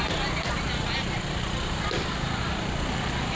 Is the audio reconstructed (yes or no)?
no